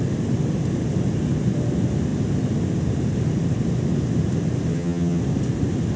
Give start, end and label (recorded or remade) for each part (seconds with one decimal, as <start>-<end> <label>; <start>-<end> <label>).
0.0-4.7 recorded; 4.7-5.2 remade; 5.2-6.0 recorded